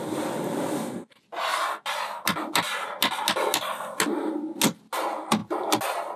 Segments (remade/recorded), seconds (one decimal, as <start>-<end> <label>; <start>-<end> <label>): 0.0-6.2 recorded